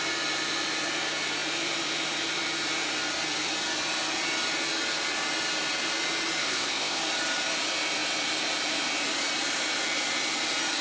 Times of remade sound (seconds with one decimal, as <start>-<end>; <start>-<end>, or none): 6.4-7.0